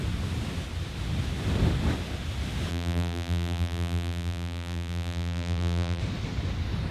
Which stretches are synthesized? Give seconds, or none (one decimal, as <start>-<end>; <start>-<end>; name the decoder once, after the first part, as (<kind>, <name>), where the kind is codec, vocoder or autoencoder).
2.7-6.0 (vocoder, BigVGAN v2)